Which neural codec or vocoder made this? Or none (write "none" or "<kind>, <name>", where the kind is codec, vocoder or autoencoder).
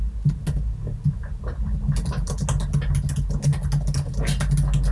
none